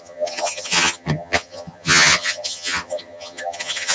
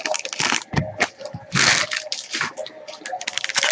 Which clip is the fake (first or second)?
first